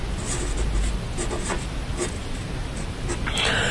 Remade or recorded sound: recorded